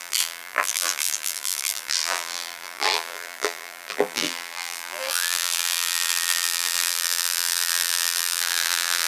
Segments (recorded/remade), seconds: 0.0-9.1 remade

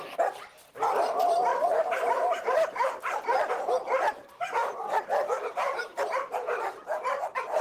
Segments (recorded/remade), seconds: 0.0-1.5 recorded; 1.5-3.5 remade; 3.5-4.2 recorded; 4.2-6.3 remade; 6.3-7.6 recorded

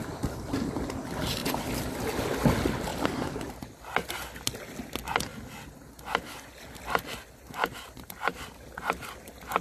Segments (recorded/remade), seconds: 0.0-2.9 recorded; 2.9-3.6 remade; 3.6-9.6 recorded

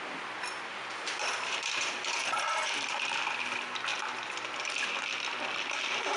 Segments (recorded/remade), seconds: 0.0-0.7 recorded; 0.7-3.1 remade; 3.1-6.2 recorded

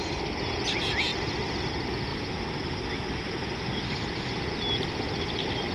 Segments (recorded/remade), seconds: 0.0-5.7 recorded

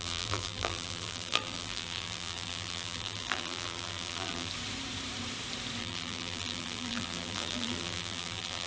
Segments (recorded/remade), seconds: 0.0-4.5 remade; 4.5-5.8 recorded; 5.8-8.7 remade

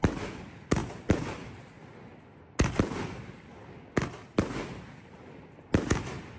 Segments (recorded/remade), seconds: 0.0-6.4 recorded

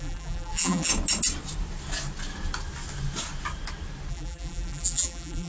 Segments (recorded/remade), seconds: 0.0-0.9 remade; 0.9-4.1 recorded; 4.1-5.5 remade